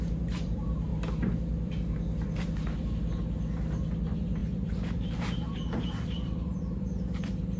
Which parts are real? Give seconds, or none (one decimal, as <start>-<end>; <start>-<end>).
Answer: none